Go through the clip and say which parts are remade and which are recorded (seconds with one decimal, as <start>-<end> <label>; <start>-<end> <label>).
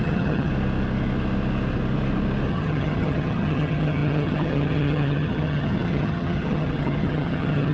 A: 0.0-0.5 remade; 0.5-2.5 recorded; 2.5-7.7 remade